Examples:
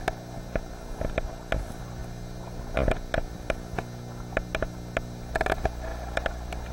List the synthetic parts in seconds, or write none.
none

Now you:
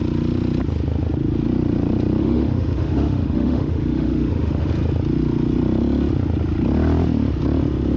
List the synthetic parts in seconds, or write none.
2.2-4.7 (autoencoder, DAC-VAE)

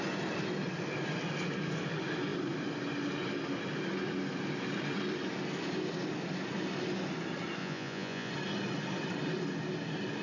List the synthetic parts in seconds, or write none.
7.6-8.3 (vocoder, Vocos)

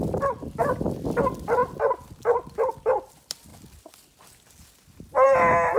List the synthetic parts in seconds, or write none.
0.0-1.6 (vocoder, BigVGAN v2); 2.7-3.5

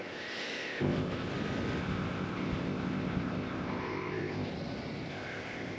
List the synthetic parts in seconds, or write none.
0.0-1.3 (codec, ZipCodec); 1.8-4.5; 5.1-5.8

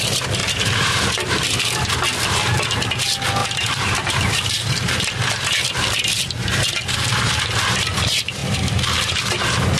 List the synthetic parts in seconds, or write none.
0.4-1.3 (vocoder, BigVGAN v2); 3.4-5.1

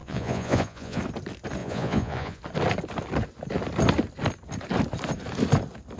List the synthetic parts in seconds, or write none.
0.0-1.0 (vocoder, Vocos); 1.6-2.4